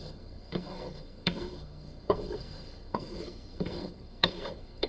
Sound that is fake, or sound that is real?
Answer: fake